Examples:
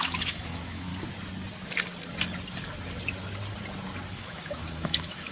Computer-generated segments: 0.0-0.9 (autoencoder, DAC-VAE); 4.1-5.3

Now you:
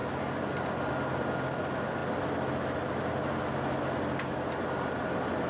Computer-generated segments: none

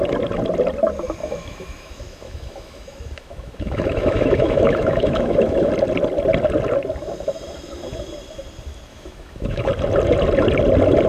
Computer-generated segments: 1.2-5.7 (autoencoder, DAC-VAE); 8.9-9.7